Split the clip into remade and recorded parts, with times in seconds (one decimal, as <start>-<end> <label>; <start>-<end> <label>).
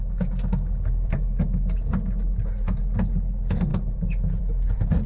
0.0-5.1 recorded